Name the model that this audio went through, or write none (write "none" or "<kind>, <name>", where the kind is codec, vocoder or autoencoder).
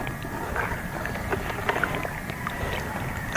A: none